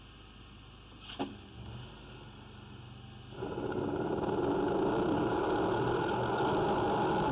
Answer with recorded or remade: recorded